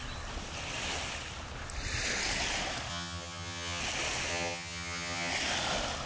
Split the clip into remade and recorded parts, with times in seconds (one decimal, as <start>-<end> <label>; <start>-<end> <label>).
0.0-2.9 recorded; 2.9-3.8 remade; 3.8-4.3 recorded; 4.3-5.3 remade; 5.3-6.1 recorded